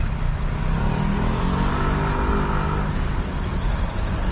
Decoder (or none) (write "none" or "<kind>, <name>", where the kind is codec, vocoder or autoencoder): none